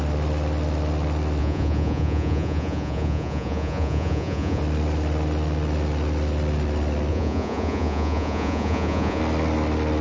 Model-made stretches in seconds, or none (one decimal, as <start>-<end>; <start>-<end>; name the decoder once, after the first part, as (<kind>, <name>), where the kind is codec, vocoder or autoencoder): 1.4-4.6 (vocoder, Vocos); 7.1-9.2